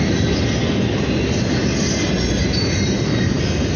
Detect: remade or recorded recorded